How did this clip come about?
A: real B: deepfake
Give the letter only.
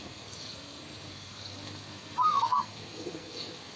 B